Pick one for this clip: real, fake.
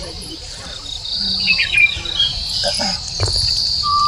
fake